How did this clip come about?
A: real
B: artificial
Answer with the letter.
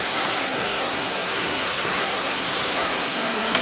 B